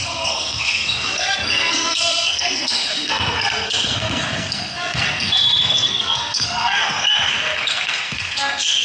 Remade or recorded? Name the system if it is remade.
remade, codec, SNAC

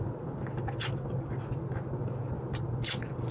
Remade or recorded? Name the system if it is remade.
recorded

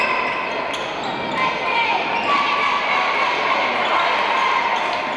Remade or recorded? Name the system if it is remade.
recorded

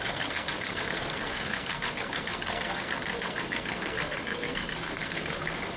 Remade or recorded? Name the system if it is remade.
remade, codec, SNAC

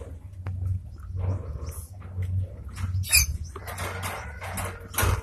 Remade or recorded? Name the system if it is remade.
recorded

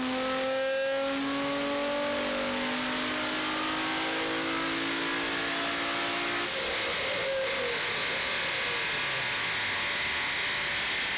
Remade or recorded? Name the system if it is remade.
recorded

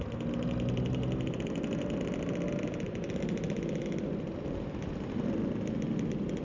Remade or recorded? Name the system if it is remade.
recorded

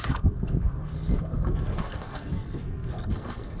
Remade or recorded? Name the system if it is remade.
remade, codec, SNAC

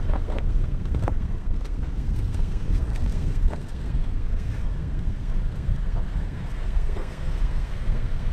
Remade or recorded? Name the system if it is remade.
remade, codec, SNAC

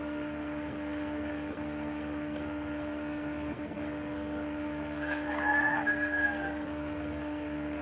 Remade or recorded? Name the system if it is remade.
remade, codec, SNAC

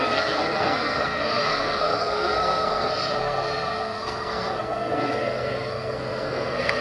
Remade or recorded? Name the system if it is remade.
remade, codec, SNAC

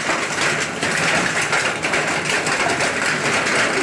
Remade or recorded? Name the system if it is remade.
recorded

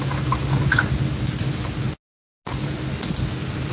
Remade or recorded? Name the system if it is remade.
recorded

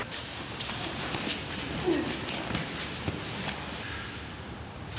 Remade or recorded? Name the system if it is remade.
recorded